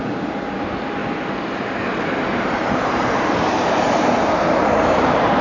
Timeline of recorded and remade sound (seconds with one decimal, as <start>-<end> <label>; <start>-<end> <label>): 0.0-1.0 remade; 1.0-1.6 recorded; 1.6-5.4 remade